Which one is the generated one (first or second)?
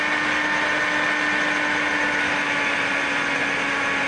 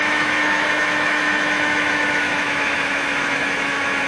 second